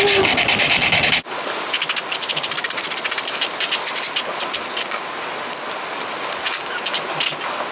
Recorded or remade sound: recorded